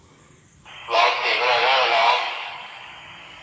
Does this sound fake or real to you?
fake